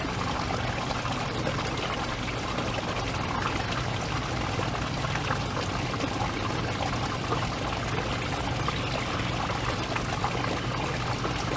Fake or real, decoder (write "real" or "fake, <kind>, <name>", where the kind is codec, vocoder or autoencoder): real